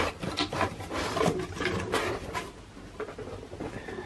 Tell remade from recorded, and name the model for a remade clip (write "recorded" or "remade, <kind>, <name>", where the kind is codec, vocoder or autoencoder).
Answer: recorded